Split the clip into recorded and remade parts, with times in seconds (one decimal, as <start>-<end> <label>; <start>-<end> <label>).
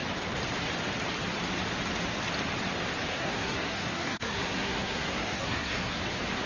0.0-3.1 recorded; 3.1-6.0 remade; 6.0-6.5 recorded